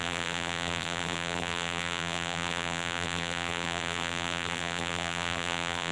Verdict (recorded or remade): remade